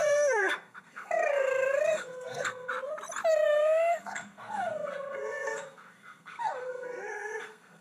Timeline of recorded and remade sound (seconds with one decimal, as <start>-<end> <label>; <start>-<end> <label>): 0.0-2.7 remade; 2.7-3.3 recorded; 3.3-7.8 remade